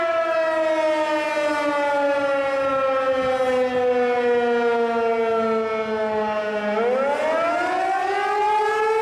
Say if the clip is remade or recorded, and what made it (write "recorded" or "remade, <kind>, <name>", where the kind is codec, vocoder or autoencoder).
recorded